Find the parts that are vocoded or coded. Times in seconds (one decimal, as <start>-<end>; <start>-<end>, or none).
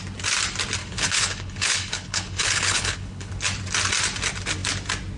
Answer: 0.8-3.3